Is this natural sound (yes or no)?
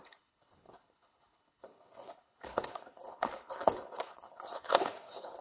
no